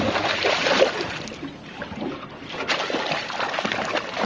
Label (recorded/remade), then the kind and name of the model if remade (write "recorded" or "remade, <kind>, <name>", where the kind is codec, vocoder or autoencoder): recorded